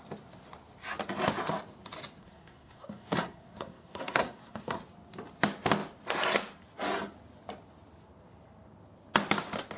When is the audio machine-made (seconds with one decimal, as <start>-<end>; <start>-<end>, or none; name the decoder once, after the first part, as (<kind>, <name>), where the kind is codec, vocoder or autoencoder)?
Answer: 2.2-4.8 (codec, SNAC)